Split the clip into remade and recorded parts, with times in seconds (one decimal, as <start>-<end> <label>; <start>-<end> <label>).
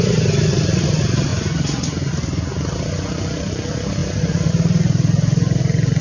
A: 0.0-1.3 recorded; 1.3-2.1 remade; 2.1-6.0 recorded